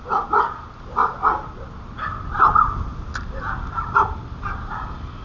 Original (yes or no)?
yes